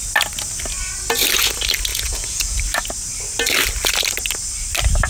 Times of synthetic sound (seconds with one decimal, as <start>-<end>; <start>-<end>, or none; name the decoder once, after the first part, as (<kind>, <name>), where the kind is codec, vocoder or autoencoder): 1.9-2.6 (vocoder, Vocos)